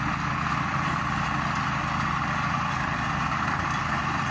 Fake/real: real